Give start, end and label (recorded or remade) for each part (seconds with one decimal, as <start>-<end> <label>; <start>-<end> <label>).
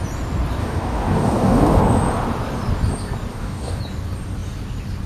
0.0-0.6 recorded; 0.6-1.8 remade; 1.8-3.3 recorded; 3.3-3.8 remade; 3.8-5.1 recorded